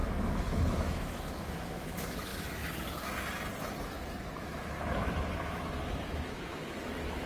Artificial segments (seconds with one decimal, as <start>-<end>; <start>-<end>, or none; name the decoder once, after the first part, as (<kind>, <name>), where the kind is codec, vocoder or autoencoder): 0.0-2.3 (autoencoder, DAC-VAE); 4.4-7.3